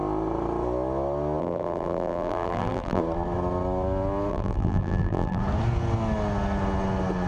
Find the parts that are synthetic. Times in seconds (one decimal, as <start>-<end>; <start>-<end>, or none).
1.4-3.0; 4.3-5.4